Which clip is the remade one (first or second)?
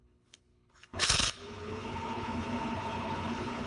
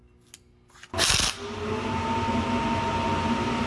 first